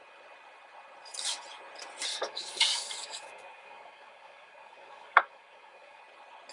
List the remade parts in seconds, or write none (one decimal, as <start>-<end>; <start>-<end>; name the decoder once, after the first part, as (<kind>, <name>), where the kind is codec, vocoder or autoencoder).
2.1-6.0 (codec, DAC)